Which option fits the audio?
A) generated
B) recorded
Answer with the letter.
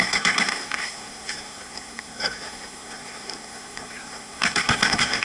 A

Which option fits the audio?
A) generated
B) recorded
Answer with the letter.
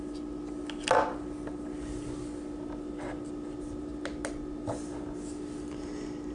B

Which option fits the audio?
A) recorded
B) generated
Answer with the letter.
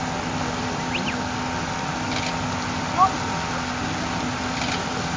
A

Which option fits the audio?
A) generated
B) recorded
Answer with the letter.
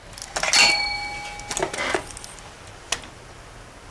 B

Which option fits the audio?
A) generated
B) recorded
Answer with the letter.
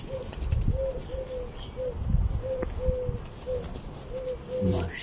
B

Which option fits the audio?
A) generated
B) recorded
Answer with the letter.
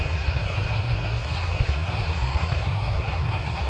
A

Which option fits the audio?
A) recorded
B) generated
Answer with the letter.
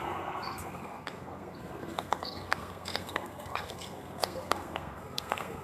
B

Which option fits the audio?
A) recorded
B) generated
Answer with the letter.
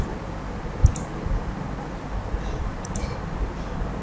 A